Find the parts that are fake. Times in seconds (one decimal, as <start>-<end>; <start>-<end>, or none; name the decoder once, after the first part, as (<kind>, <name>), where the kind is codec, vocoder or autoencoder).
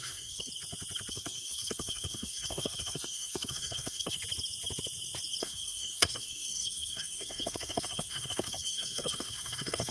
0.0-0.5 (codec, SNAC); 1.1-4.2; 5.4-9.9